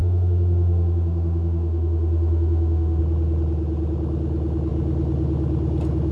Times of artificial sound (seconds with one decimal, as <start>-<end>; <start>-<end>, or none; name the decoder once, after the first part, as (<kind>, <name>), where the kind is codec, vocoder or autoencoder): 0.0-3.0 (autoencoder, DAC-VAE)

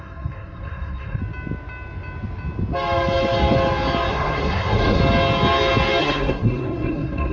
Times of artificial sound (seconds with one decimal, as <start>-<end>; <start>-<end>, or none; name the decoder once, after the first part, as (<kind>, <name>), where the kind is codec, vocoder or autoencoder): 0.0-1.2 (codec, SNAC); 4.1-5.0; 6.0-7.3

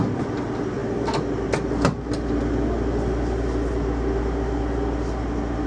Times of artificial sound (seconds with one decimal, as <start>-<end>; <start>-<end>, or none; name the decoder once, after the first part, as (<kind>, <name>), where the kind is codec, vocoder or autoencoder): none

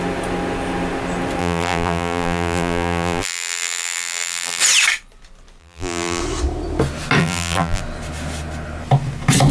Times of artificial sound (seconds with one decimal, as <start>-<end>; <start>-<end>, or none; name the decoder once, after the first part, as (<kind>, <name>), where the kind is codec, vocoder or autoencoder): 1.4-4.6 (vocoder, BigVGAN v2); 5.6-6.2; 7.2-7.8

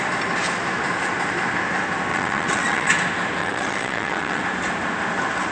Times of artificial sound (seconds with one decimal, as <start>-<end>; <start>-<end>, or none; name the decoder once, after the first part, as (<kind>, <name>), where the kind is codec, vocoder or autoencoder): 2.1-2.9 (vocoder, WaveNeXt); 3.4-4.4